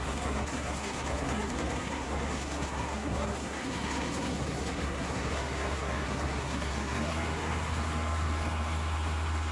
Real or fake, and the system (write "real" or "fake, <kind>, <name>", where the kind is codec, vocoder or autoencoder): fake, codec, SNAC